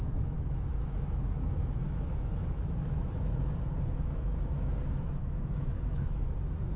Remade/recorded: remade